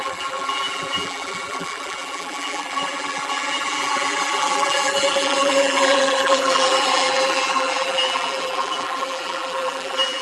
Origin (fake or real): fake